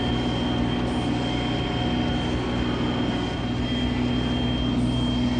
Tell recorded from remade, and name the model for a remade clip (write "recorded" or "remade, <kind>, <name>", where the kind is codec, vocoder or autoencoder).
recorded